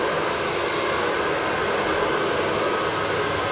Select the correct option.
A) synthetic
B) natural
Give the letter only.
B